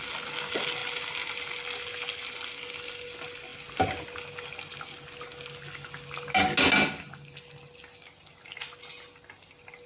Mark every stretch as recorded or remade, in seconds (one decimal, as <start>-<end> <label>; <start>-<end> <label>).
0.0-9.9 recorded